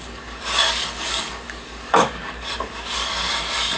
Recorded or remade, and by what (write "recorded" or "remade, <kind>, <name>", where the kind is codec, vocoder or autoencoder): remade, codec, DAC